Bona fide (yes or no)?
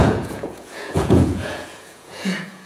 no